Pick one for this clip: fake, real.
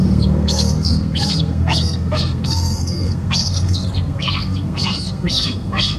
fake